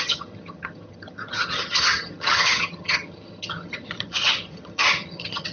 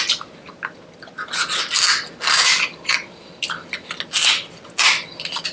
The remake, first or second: first